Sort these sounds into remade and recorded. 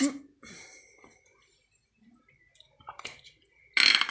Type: recorded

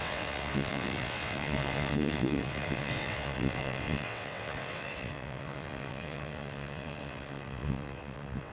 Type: remade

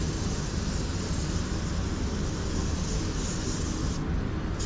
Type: recorded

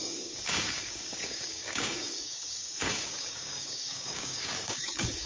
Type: remade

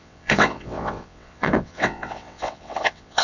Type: remade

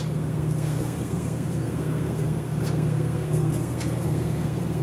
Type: remade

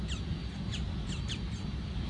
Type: recorded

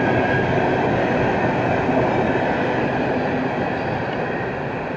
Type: recorded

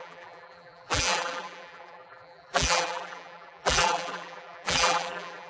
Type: remade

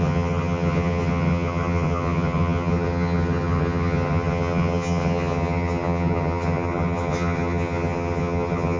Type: remade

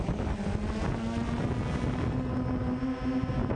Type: recorded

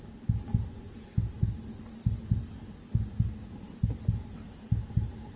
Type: recorded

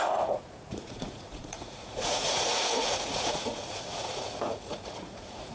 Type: remade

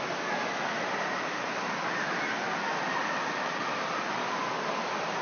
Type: recorded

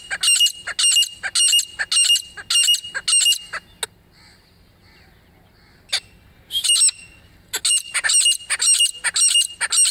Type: recorded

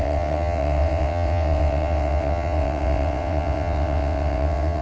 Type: remade